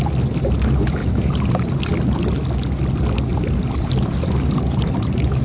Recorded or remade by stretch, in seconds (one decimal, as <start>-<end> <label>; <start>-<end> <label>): 0.0-1.0 recorded; 1.0-1.6 remade; 1.6-3.3 recorded; 3.3-5.4 remade